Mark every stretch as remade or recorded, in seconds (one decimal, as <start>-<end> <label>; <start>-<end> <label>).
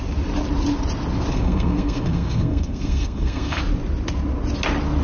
0.0-1.3 recorded; 1.3-3.6 remade; 3.6-5.0 recorded